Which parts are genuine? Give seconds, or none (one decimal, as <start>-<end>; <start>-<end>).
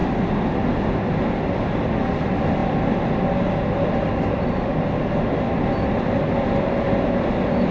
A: 0.0-7.7